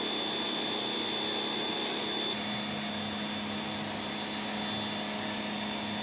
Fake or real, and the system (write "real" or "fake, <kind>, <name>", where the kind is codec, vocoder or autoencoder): real